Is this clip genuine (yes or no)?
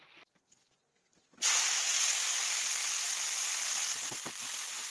yes